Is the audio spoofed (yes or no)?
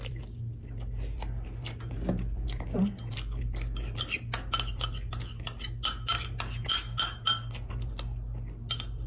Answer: no